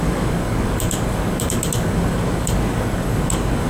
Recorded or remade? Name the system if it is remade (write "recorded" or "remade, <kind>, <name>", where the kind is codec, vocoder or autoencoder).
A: remade, codec, DAC